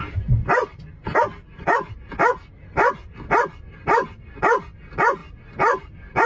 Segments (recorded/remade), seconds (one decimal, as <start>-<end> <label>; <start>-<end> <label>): 0.0-6.3 recorded